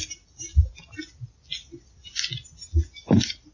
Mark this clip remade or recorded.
recorded